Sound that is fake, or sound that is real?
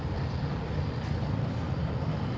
real